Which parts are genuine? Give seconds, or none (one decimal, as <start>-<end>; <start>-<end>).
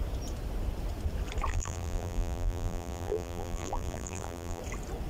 0.0-1.5; 4.6-5.1